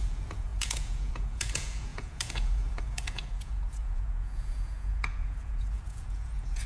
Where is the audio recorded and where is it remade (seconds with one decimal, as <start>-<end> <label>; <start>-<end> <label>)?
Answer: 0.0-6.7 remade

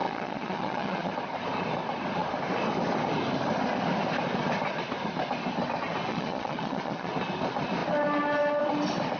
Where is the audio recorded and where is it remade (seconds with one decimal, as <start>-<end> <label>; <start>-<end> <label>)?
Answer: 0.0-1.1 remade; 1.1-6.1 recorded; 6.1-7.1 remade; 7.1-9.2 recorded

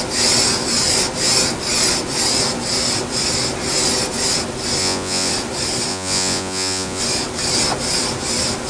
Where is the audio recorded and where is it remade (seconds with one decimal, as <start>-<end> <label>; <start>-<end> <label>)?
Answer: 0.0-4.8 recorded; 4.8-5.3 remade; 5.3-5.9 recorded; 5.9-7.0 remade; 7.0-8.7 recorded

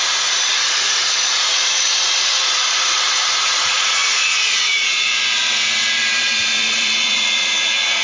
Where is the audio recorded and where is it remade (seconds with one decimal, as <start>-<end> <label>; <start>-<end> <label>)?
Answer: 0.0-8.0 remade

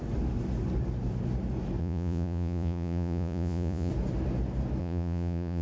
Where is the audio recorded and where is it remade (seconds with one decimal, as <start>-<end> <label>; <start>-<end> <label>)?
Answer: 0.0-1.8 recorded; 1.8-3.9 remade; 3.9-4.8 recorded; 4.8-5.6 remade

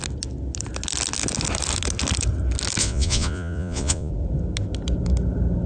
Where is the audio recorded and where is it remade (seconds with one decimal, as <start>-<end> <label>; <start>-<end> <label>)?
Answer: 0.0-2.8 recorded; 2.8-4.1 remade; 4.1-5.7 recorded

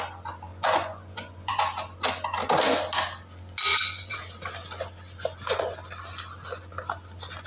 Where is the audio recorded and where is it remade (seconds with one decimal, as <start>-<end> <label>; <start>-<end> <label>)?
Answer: 0.0-0.5 recorded; 0.5-1.6 remade; 1.6-3.7 recorded; 3.7-4.2 remade; 4.2-7.5 recorded